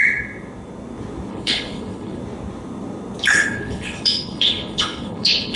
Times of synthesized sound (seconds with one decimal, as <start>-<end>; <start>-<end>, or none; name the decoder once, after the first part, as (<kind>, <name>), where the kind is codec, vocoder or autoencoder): 1.3-2.2 (codec, HILCodec); 3.3-5.6